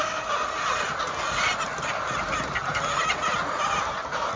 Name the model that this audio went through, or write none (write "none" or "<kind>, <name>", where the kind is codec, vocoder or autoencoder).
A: none